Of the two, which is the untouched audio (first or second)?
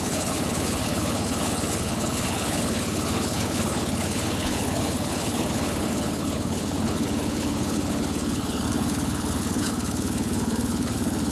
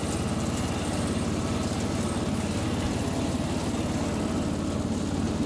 second